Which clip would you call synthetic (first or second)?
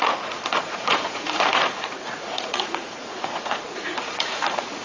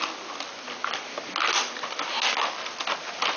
first